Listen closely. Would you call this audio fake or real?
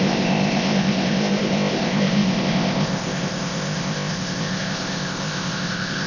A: fake